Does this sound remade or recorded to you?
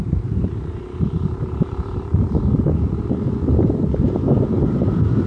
remade